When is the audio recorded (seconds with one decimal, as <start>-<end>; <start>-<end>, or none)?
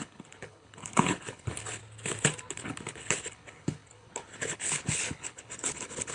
1.8-2.5